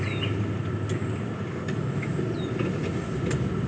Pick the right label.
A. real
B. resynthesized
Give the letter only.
A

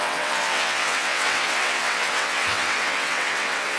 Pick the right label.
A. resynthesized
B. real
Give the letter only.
A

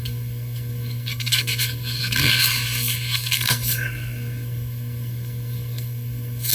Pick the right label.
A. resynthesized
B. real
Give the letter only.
A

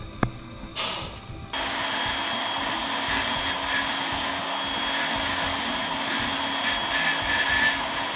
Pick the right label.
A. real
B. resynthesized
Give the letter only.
A